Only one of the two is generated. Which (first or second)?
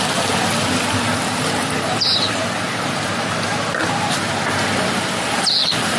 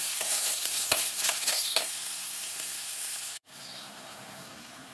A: second